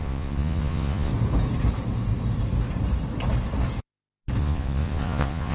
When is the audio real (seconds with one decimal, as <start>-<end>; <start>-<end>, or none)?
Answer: 1.1-4.4